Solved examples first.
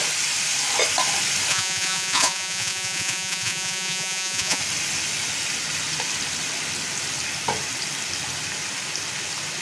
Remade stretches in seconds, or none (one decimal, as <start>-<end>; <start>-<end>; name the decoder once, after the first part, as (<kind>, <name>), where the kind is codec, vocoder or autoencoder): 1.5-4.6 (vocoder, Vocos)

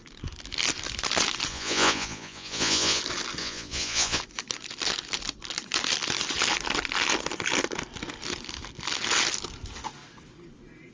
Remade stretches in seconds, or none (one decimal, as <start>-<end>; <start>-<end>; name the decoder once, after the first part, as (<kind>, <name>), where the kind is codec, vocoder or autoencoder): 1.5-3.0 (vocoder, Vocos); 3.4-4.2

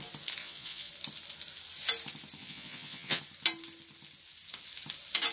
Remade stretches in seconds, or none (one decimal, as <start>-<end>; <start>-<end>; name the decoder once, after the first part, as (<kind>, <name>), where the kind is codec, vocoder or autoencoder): 0.4-0.9 (vocoder, Vocos); 2.4-3.2